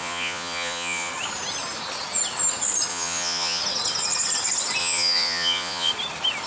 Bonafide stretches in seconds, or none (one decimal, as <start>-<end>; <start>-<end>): 1.1-2.9; 3.6-4.8; 5.9-6.5